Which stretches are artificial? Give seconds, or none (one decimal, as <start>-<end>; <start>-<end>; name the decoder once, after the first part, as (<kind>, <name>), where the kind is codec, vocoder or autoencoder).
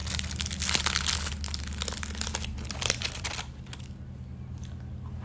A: none